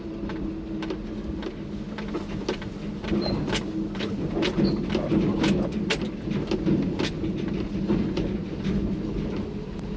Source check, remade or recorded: recorded